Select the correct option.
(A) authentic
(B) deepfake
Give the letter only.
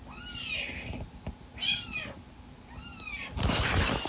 A